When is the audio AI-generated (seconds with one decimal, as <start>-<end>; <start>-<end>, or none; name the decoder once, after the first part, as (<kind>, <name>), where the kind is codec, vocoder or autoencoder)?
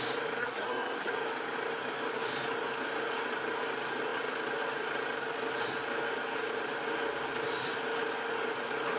0.4-1.1 (codec, SNAC)